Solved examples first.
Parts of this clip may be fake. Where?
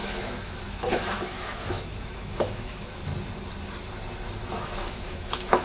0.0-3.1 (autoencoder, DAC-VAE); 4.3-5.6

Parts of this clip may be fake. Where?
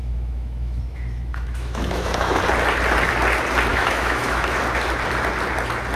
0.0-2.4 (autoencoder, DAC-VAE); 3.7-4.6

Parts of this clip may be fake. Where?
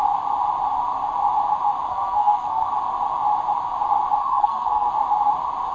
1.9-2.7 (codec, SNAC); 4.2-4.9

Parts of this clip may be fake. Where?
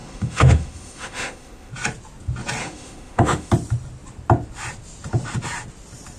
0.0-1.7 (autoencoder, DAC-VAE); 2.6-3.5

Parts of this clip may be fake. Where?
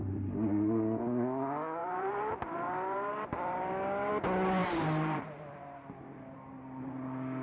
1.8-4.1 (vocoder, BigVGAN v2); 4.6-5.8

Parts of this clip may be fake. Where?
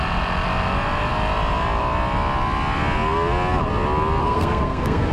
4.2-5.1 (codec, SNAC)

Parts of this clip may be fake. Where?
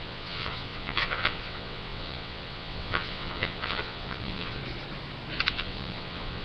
0.0-4.6 (vocoder, WaveNeXt); 5.5-6.4